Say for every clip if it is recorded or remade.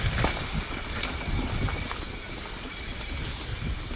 recorded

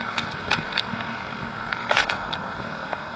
remade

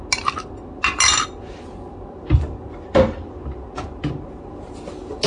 recorded